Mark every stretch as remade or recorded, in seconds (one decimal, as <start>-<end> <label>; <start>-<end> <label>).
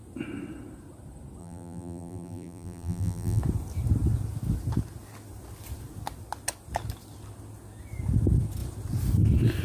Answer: 0.0-1.4 recorded; 1.4-3.4 remade; 3.4-9.6 recorded